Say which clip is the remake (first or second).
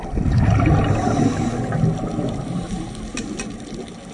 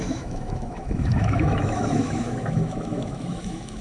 second